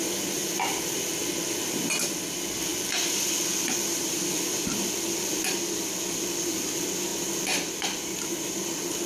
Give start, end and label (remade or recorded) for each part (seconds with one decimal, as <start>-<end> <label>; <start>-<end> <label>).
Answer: 0.0-9.1 recorded